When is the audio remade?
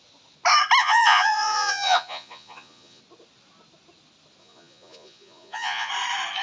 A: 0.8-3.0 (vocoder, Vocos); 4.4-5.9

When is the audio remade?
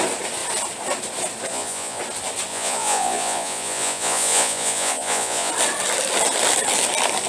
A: 1.5-2.0 (vocoder, Vocos); 2.5-5.5